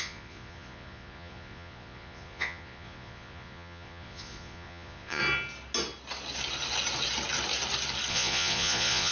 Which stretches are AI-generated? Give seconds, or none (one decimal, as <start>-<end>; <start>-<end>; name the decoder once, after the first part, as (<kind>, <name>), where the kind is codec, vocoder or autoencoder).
0.0-5.2 (vocoder, Vocos); 8.1-9.1